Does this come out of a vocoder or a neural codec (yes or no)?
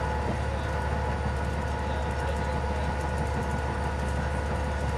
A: no